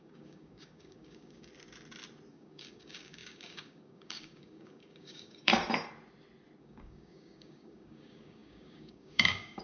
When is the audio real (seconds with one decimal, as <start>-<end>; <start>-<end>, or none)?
1.5-2.3; 5.5-6.6